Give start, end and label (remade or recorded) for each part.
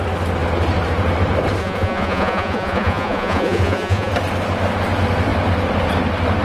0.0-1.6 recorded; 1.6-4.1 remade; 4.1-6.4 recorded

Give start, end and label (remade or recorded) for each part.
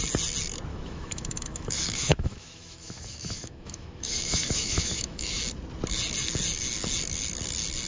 0.0-0.7 recorded; 0.7-5.4 remade; 5.4-7.9 recorded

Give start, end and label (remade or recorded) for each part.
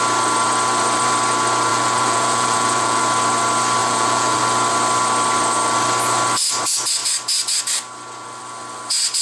0.0-1.7 recorded; 1.7-3.0 remade; 3.0-3.8 recorded; 3.8-4.4 remade; 4.4-9.2 recorded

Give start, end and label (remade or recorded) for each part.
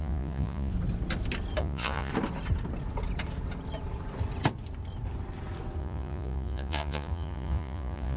0.0-0.7 remade; 0.7-1.6 recorded; 1.6-2.1 remade; 2.1-5.8 recorded; 5.8-8.2 remade